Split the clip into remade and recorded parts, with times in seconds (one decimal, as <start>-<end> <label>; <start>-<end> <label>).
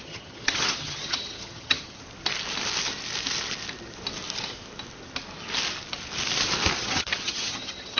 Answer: 0.0-2.0 remade; 2.0-6.8 recorded; 6.8-8.0 remade